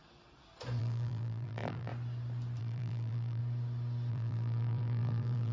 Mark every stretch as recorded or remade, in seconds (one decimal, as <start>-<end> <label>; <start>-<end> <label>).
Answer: 0.0-0.8 recorded; 0.8-1.9 remade; 1.9-2.6 recorded; 2.6-3.4 remade; 3.4-4.1 recorded; 4.1-5.5 remade